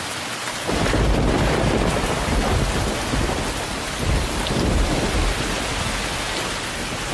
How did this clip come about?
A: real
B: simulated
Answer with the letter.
A